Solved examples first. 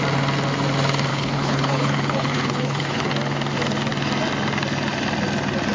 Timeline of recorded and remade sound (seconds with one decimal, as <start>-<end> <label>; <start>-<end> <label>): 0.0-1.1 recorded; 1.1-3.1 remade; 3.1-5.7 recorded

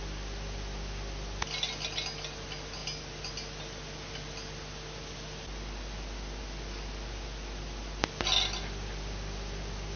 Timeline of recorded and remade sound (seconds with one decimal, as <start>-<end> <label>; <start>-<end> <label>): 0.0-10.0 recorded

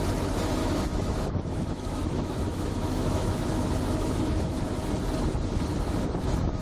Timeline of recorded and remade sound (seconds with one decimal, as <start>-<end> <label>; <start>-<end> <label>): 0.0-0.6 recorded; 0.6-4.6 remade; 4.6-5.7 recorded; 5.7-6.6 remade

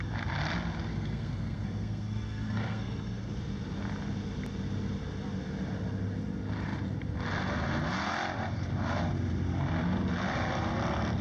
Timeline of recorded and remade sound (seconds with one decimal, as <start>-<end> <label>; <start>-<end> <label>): 0.0-0.9 recorded; 0.9-3.3 remade; 3.3-11.2 recorded